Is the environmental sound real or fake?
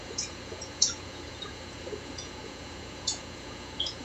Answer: fake